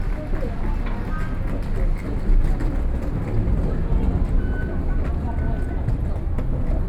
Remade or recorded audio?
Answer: recorded